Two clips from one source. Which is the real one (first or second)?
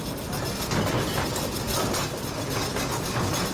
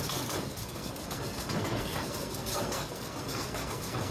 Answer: first